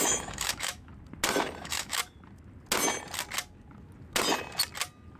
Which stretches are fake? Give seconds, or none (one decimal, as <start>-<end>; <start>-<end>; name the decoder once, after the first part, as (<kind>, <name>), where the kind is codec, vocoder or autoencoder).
0.0-0.9 (autoencoder, DAC-VAE); 1.6-2.0